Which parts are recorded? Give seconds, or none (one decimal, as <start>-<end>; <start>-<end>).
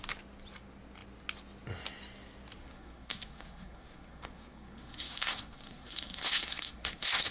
0.0-2.6